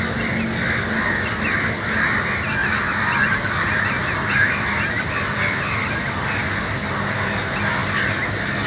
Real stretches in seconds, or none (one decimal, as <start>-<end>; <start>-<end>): 0.0-8.7